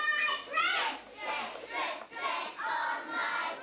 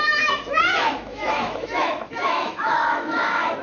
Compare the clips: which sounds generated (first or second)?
second